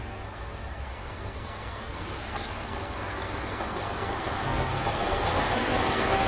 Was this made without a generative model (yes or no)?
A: no